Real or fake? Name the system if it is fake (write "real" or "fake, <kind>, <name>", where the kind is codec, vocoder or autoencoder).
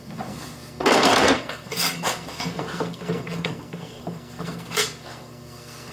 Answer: fake, codec, SNAC